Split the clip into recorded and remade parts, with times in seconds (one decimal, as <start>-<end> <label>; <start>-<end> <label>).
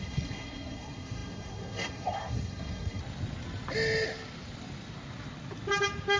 0.0-3.0 remade; 3.0-6.2 recorded